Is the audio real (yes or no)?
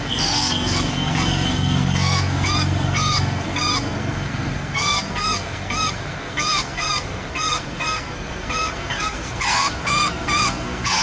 no